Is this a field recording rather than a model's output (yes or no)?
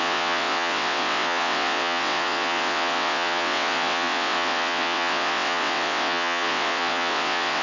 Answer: no